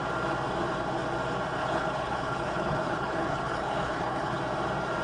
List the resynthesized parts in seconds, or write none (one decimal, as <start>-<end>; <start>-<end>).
1.6-4.4